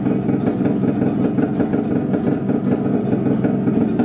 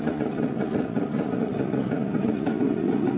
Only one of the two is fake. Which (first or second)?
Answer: second